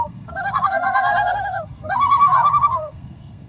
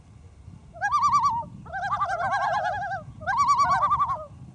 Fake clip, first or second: first